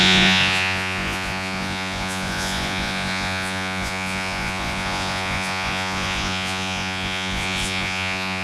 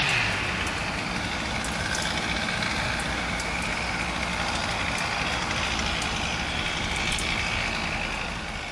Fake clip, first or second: first